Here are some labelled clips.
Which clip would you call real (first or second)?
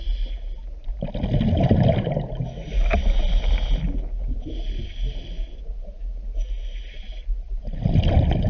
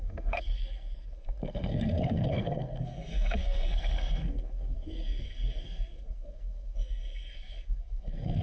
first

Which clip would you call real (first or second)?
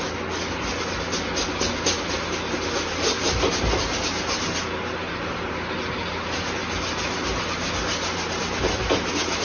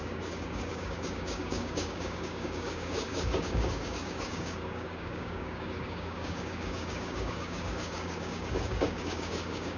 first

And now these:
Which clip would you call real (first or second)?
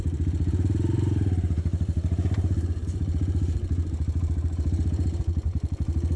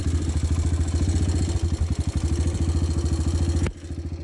second